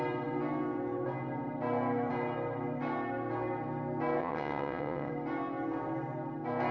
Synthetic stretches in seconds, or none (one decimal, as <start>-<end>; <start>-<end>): 4.2-5.1